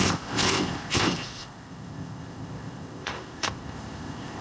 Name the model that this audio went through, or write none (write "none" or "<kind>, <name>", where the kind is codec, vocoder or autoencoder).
codec, ZipCodec